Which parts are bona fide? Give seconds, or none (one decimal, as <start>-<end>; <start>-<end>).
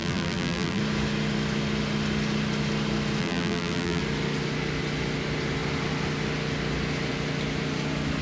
0.8-3.2; 4.0-8.2